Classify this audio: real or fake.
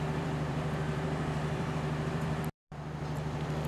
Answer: fake